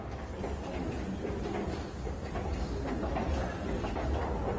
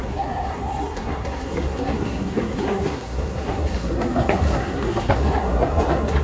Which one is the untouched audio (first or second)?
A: first